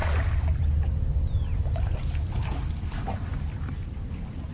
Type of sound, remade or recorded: recorded